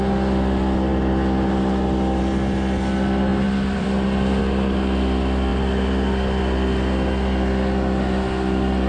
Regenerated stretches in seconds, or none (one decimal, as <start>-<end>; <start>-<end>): 3.3-4.4; 5.5-6.4